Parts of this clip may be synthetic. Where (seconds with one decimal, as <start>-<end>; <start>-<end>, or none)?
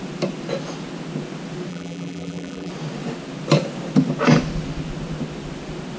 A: 1.7-2.7